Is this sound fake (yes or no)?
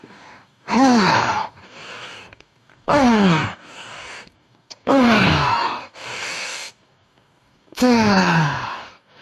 yes